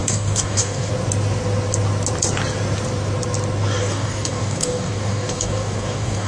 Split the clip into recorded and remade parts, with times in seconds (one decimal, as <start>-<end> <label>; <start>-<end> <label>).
0.0-0.9 remade; 0.9-3.8 recorded; 3.8-6.3 remade